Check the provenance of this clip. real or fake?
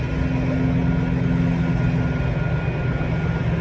real